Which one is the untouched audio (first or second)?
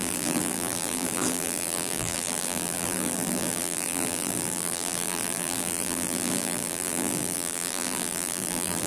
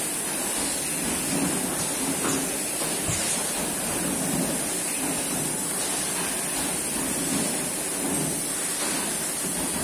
second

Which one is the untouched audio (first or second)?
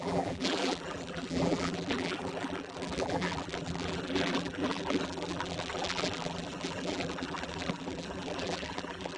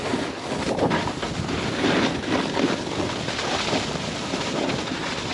second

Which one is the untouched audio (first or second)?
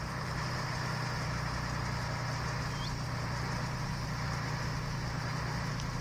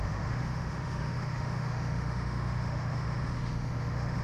first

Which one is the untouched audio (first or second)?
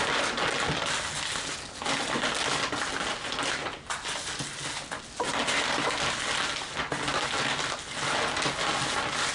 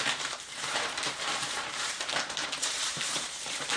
first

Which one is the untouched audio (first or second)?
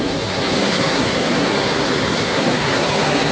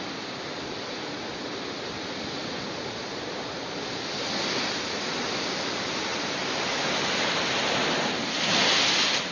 second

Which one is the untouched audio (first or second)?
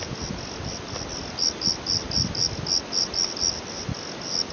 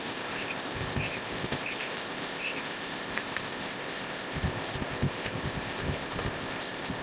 first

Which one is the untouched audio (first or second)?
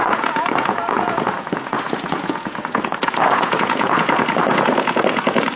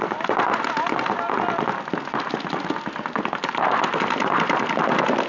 second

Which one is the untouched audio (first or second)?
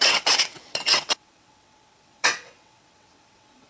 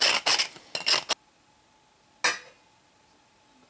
second